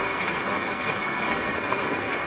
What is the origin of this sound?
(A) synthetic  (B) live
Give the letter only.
A